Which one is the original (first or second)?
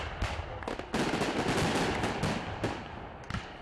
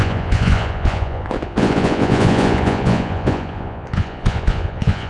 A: first